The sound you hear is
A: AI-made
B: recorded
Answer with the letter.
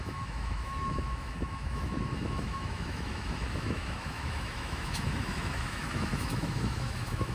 A